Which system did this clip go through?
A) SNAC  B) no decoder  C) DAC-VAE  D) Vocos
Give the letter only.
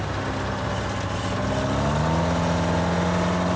B